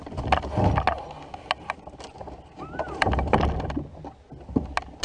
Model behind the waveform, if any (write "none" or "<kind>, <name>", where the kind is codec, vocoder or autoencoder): none